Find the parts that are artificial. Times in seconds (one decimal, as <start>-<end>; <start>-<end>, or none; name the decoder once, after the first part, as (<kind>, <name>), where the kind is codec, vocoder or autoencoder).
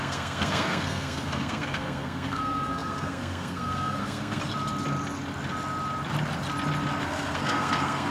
0.0-4.4 (codec, SNAC); 7.0-8.1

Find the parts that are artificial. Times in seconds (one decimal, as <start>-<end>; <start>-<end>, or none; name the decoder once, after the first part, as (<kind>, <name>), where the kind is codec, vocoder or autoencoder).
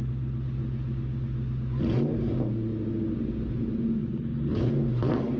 4.0-4.7 (codec, HILCodec)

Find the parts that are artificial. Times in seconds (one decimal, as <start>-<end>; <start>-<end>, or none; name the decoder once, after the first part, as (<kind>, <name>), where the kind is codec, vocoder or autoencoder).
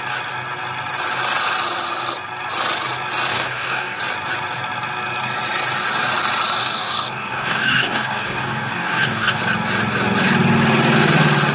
3.3-4.0 (codec, DAC); 6.6-9.4